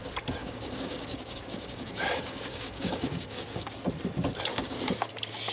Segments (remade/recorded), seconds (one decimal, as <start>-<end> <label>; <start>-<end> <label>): 0.0-0.4 recorded; 0.4-3.7 remade; 3.7-4.5 recorded; 4.5-5.1 remade; 5.1-5.5 recorded

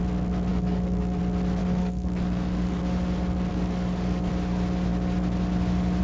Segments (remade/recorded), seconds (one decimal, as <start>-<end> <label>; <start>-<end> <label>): 0.0-0.5 recorded; 0.5-1.2 remade; 1.2-1.6 recorded; 1.6-2.8 remade; 2.8-3.5 recorded; 3.5-4.3 remade; 4.3-6.0 recorded

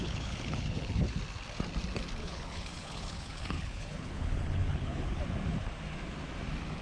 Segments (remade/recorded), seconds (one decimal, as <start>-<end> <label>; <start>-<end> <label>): 0.0-1.2 remade; 1.2-2.2 recorded; 2.2-5.2 remade; 5.2-6.8 recorded